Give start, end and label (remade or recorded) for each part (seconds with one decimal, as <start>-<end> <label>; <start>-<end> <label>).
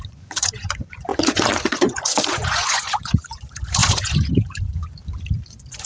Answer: 0.0-5.0 remade; 5.0-5.5 recorded; 5.5-5.9 remade